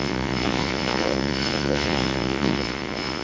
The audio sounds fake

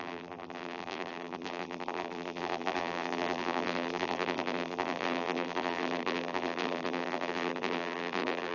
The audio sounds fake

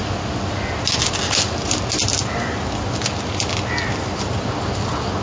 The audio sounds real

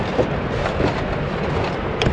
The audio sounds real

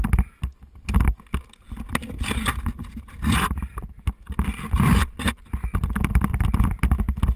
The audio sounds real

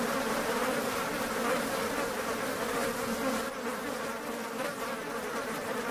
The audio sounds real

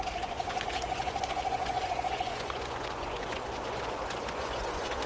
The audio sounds fake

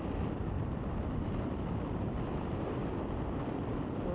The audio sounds real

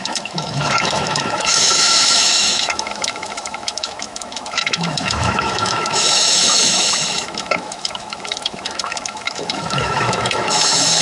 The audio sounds fake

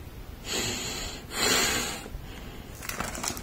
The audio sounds real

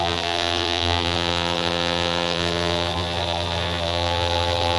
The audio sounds fake